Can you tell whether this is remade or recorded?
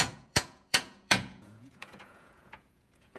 remade